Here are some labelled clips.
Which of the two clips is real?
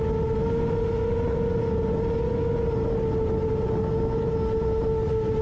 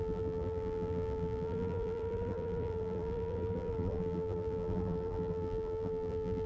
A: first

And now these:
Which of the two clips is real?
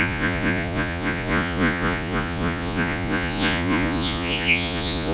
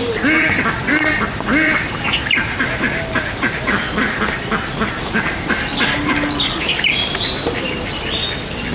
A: second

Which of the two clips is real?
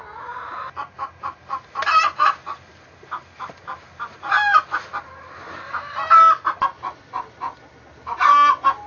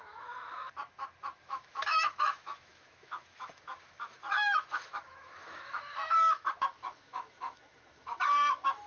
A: first